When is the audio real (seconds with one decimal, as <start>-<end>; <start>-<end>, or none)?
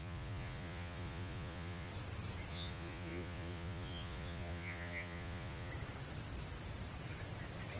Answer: 1.9-2.5; 5.7-7.8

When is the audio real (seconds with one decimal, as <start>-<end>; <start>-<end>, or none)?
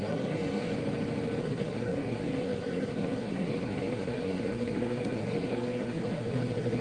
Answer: 0.7-1.4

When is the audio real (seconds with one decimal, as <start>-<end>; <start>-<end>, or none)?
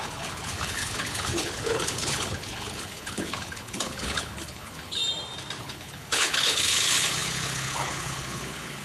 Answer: 5.0-5.6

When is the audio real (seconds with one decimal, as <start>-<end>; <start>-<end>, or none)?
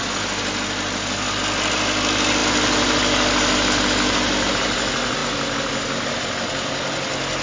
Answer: 0.0-7.4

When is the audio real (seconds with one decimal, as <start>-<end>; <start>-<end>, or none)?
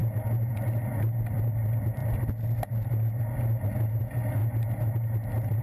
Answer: 0.0-5.6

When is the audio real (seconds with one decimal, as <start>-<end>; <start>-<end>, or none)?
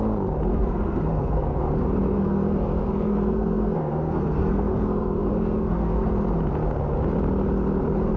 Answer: 0.0-0.5; 1.7-2.1; 6.1-8.2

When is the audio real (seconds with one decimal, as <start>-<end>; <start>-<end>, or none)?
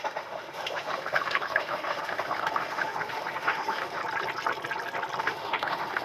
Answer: 4.0-5.2